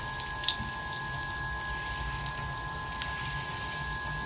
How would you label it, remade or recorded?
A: recorded